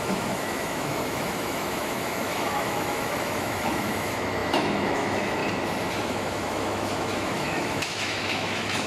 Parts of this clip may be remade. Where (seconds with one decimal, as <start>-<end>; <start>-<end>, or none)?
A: 0.0-5.4; 6.0-8.9

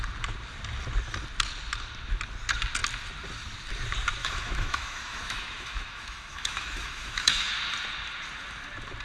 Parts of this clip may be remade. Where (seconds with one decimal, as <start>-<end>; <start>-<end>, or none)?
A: 4.2-7.5

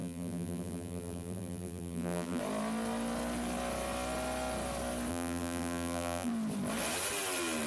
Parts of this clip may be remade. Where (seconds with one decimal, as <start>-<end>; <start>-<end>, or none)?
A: 0.0-2.4; 5.1-6.3

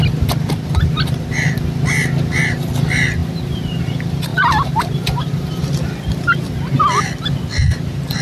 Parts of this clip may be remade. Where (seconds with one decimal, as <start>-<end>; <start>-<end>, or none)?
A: 3.2-3.8; 4.3-5.6

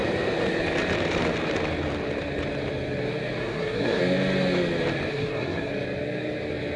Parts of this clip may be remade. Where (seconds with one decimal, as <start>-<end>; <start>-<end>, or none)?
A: 3.4-4.0; 5.1-5.7

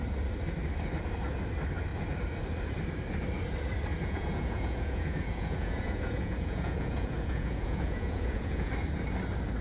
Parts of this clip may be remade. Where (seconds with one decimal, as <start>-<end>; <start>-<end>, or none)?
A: 3.9-8.7

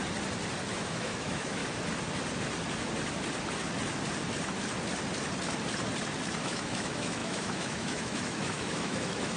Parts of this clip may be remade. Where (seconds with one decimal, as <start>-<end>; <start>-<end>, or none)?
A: 0.7-1.6; 6.4-9.4